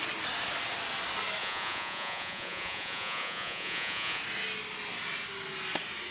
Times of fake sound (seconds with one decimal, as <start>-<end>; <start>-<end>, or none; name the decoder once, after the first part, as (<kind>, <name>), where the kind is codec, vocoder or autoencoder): 1.4-4.2 (vocoder, Vocos)